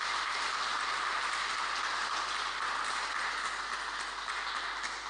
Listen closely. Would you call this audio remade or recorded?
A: recorded